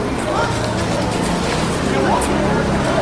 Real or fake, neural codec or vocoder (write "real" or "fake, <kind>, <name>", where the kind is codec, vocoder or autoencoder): real